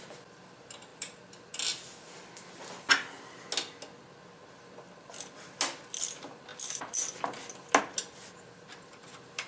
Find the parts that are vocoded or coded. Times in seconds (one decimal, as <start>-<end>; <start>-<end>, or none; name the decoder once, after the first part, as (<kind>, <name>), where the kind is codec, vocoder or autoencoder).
none